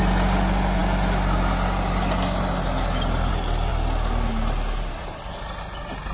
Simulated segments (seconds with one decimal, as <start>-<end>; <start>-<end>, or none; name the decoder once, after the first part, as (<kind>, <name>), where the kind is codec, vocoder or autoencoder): none